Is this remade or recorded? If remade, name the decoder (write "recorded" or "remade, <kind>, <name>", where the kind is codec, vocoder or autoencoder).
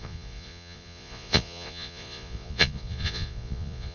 remade, vocoder, Vocos